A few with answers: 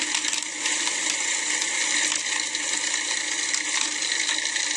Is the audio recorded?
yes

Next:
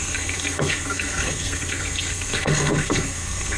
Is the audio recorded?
no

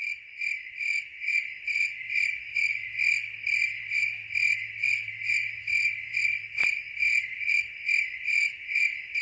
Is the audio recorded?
yes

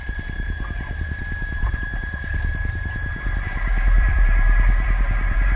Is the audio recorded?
no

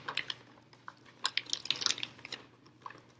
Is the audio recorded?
yes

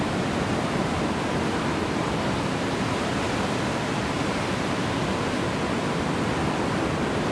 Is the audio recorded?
yes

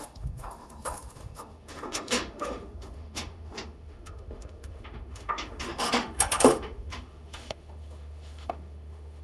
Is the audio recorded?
no